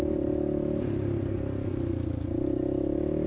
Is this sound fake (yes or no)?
no